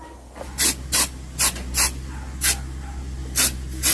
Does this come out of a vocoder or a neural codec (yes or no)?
no